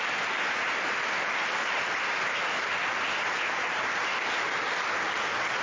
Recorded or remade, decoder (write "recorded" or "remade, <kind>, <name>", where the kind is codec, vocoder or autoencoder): recorded